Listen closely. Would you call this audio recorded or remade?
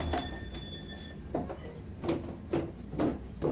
recorded